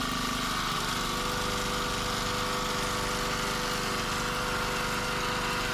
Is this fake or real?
real